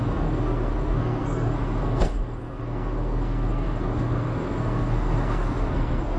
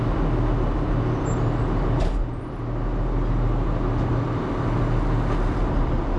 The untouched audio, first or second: second